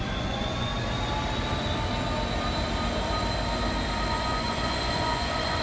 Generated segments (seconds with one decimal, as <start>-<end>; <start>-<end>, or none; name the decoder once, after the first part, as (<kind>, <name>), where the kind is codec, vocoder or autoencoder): 0.0-0.7 (vocoder, Vocos); 4.1-5.6